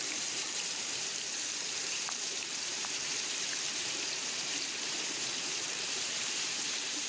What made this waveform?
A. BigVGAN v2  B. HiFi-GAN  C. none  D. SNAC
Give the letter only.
A